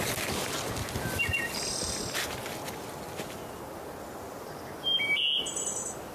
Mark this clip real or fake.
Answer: real